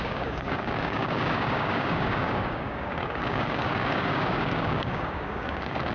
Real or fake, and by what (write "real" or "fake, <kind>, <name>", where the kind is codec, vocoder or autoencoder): fake, codec, DAC